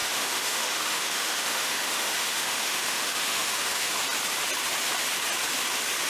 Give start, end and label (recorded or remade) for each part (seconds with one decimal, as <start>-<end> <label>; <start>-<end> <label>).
0.0-3.9 remade; 3.9-6.1 recorded